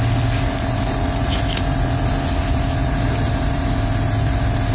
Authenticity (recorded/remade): recorded